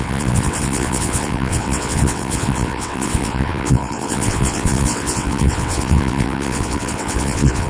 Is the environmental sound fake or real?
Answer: fake